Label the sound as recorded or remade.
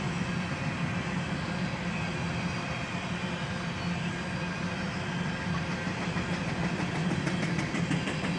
recorded